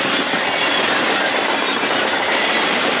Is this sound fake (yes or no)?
no